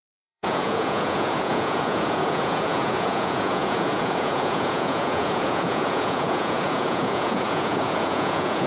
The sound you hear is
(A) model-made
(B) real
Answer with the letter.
A